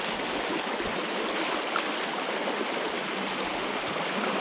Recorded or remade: recorded